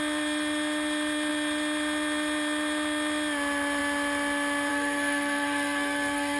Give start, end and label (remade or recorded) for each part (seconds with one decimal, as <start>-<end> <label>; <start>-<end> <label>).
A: 0.0-4.7 recorded; 4.7-6.4 remade